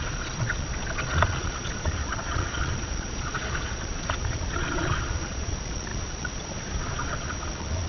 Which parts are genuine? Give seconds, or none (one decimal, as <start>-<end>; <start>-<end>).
none